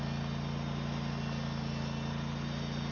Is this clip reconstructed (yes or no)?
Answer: no